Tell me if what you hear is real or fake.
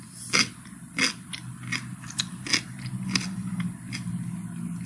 real